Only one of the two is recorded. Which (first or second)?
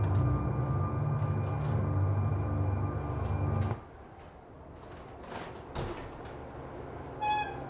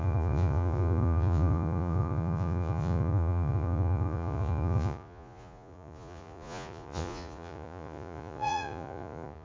first